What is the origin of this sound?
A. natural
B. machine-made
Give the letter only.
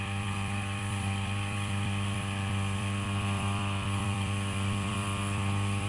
B